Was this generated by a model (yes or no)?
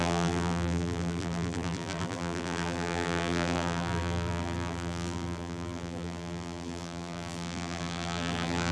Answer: yes